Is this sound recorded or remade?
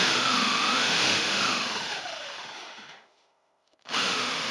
remade